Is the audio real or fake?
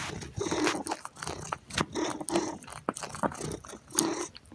real